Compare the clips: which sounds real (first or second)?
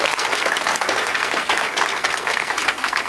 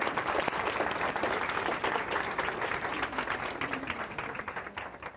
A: second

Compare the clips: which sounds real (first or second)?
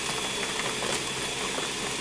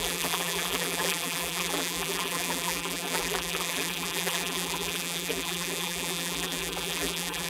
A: first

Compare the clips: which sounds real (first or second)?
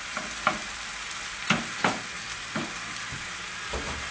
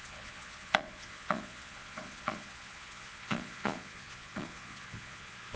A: first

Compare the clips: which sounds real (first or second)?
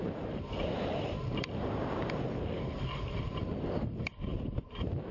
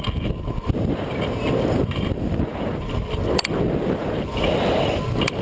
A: second